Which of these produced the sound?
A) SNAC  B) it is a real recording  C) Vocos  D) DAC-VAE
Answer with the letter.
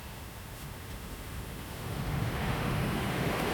D